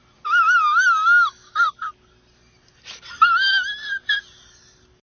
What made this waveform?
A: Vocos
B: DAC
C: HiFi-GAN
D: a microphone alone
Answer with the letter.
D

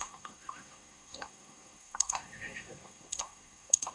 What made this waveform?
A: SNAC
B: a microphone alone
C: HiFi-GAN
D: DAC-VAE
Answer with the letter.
A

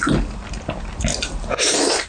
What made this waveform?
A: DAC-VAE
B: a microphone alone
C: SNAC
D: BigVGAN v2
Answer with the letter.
B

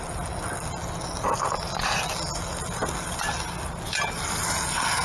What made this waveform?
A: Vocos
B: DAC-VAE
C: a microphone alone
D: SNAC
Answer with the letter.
C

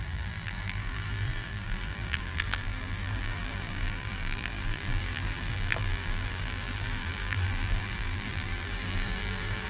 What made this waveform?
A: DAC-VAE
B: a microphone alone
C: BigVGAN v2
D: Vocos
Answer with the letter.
C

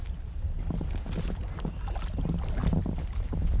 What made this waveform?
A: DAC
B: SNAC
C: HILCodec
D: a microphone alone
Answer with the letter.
D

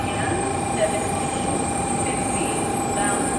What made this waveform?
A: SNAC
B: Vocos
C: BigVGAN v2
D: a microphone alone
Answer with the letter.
C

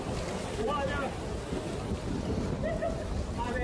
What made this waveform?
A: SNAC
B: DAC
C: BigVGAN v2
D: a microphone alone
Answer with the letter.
D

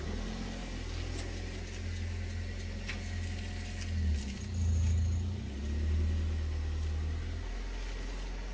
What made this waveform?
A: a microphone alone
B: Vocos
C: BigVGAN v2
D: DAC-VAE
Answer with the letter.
A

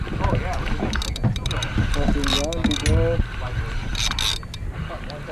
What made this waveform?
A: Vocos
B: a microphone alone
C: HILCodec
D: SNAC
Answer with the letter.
B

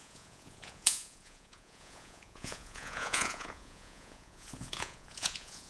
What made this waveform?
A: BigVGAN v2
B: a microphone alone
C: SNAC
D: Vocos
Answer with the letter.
D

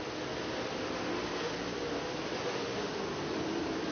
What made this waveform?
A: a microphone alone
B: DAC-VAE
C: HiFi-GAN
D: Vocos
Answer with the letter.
A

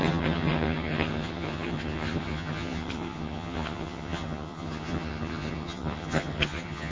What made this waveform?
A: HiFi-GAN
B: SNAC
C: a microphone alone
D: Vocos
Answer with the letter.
A